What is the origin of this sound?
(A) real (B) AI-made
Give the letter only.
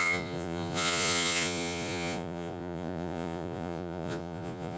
B